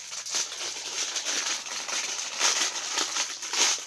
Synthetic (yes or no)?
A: no